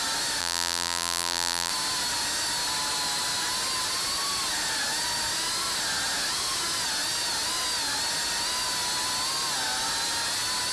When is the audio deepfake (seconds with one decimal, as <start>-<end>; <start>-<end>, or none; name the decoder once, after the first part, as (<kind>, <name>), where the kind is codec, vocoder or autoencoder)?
0.4-1.7 (vocoder, BigVGAN v2)